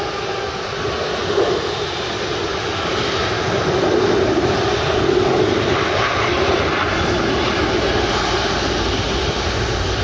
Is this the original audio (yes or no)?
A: yes